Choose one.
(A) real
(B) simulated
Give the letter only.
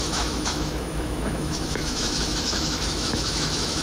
B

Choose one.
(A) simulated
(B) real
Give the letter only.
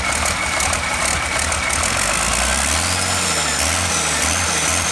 B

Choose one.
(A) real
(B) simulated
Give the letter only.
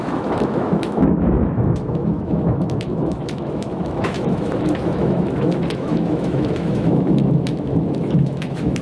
B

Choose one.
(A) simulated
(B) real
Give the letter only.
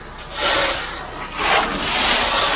B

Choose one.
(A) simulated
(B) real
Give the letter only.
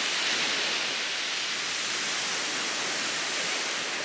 B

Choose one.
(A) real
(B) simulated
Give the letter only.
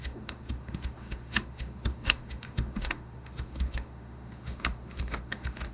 B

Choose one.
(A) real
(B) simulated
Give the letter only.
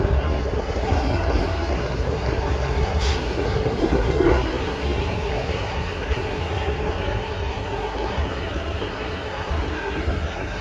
B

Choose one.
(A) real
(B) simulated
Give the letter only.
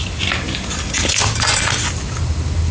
A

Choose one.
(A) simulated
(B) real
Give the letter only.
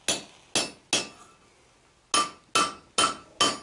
B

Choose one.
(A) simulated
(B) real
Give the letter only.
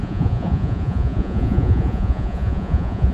A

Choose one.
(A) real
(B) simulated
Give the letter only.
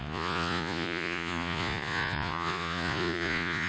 B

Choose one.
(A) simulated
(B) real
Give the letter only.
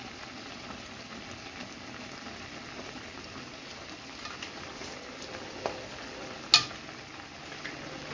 B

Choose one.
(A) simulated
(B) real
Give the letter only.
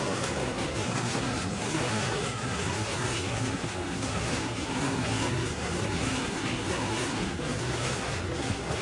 A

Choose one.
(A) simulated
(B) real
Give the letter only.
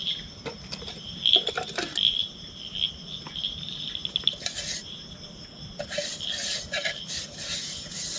B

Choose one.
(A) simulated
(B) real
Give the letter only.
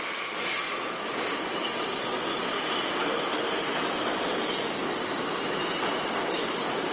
B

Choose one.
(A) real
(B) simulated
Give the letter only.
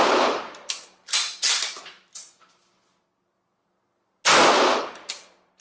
A